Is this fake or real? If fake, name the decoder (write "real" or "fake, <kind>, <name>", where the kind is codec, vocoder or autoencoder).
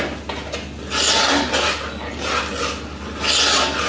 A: real